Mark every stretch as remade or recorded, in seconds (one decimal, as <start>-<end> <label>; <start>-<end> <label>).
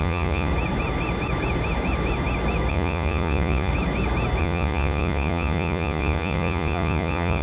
0.0-0.5 remade; 0.5-2.7 recorded; 2.7-3.7 remade; 3.7-4.4 recorded; 4.4-7.4 remade